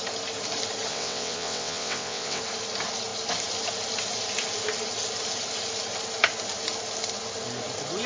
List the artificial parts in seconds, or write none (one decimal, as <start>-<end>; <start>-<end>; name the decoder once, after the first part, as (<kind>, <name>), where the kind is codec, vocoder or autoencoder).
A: 0.9-2.4 (vocoder, WaveNeXt)

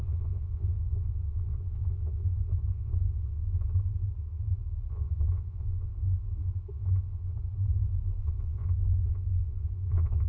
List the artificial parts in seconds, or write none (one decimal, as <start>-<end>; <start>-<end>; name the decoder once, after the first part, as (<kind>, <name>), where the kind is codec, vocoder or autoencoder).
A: 0.0-3.4 (vocoder, Vocos); 4.9-5.9; 6.7-7.3; 8.2-10.3

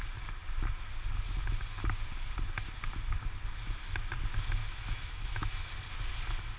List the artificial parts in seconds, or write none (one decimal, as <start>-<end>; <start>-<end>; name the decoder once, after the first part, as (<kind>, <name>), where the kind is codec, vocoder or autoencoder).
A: 4.6-5.7 (autoencoder, DAC-VAE)

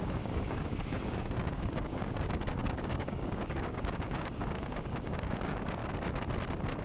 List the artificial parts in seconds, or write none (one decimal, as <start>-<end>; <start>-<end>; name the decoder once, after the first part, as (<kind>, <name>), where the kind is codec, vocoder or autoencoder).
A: 0.0-5.8 (codec, DAC)

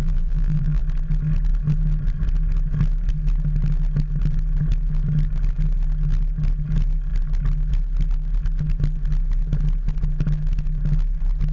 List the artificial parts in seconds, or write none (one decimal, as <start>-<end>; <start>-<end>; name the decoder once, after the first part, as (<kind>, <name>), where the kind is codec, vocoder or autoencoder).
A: 0.0-0.8 (vocoder, BigVGAN v2)

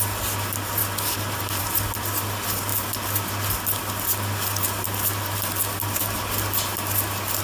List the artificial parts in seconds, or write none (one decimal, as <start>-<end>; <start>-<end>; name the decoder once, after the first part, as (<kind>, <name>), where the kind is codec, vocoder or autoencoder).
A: none

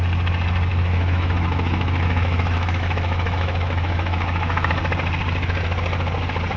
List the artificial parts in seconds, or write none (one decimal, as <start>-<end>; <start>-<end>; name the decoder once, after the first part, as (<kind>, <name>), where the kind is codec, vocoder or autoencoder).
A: 0.7-4.7 (autoencoder, DAC-VAE)

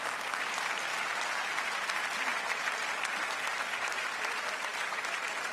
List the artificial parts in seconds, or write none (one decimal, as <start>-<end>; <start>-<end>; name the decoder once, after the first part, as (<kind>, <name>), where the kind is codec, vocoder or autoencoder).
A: none